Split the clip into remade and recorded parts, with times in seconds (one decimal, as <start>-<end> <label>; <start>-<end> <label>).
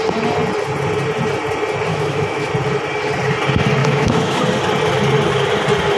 0.0-1.9 recorded; 1.9-2.5 remade; 2.5-3.8 recorded; 3.8-4.4 remade; 4.4-6.0 recorded